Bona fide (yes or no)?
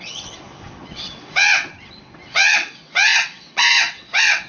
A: no